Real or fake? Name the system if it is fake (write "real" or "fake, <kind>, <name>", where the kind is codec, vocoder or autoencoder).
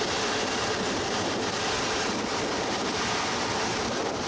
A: real